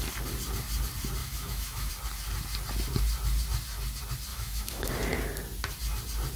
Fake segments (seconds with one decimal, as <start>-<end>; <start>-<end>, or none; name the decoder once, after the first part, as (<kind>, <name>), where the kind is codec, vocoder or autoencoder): 1.2-1.9 (autoencoder, DAC-VAE); 4.3-4.9